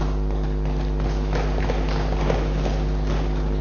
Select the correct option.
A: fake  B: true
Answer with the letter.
B